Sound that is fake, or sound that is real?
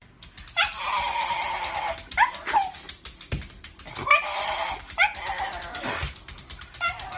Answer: real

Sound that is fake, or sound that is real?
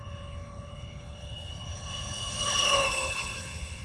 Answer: fake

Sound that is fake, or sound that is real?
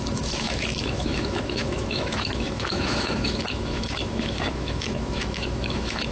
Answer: fake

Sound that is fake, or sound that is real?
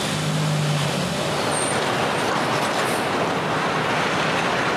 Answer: real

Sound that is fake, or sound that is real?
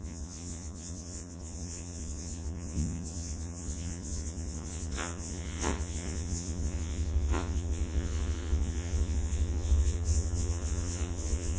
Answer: fake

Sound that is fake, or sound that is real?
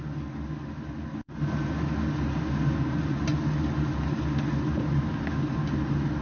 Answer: real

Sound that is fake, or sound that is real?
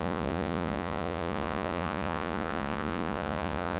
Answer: fake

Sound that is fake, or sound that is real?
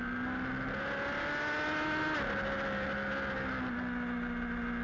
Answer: real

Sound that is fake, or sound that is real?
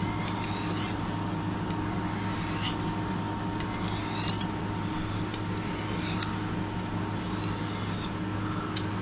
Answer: real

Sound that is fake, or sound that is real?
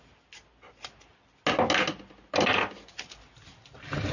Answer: real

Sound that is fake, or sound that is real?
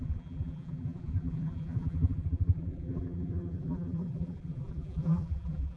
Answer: fake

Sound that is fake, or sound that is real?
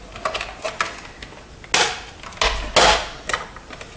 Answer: real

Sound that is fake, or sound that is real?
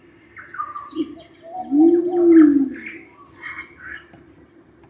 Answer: real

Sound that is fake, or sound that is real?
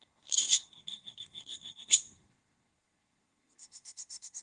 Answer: fake